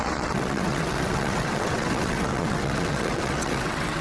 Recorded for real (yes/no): no